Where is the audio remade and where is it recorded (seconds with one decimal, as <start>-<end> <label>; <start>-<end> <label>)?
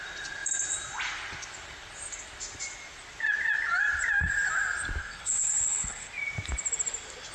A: 0.0-5.0 recorded; 5.0-6.1 remade; 6.1-7.3 recorded